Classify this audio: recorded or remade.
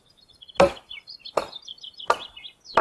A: recorded